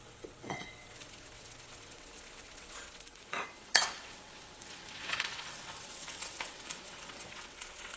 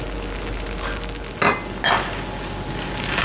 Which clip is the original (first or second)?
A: second